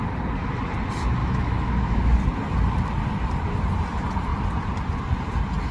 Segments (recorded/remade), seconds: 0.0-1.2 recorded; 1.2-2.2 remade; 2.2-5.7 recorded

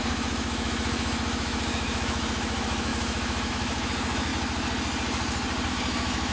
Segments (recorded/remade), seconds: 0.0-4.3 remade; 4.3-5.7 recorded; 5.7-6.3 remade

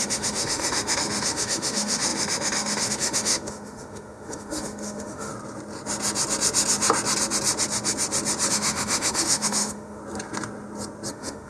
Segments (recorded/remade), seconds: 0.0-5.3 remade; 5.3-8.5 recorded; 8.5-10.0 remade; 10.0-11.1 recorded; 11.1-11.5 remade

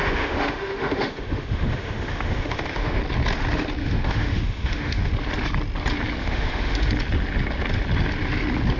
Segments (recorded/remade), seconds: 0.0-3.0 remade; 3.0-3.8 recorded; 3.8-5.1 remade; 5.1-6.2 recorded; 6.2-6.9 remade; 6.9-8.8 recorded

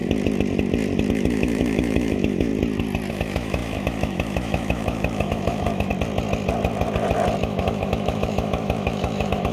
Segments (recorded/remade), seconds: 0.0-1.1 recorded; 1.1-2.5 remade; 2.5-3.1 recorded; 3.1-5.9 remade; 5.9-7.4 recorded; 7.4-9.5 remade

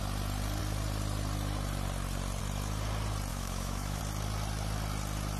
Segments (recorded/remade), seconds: 0.0-3.3 recorded; 3.3-4.0 remade; 4.0-5.4 recorded

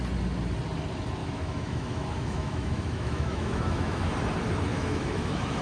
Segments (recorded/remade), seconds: 0.0-1.2 recorded; 1.2-4.1 remade; 4.1-4.7 recorded; 4.7-5.6 remade

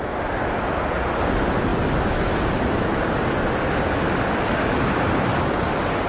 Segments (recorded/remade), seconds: 0.0-6.1 recorded